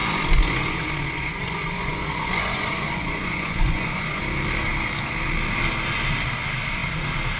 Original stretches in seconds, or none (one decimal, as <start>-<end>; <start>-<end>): 4.2-7.4